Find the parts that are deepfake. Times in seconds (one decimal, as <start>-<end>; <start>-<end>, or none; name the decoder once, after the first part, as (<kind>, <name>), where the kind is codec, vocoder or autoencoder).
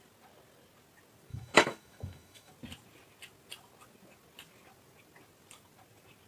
1.3-2.5 (autoencoder, DAC-VAE)